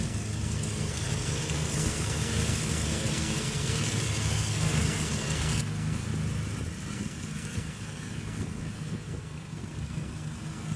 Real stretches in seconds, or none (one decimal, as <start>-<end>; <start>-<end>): 6.1-6.9